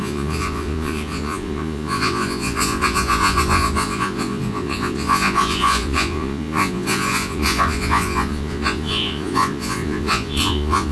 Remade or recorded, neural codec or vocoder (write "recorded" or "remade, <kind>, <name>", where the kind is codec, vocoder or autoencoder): remade, vocoder, Vocos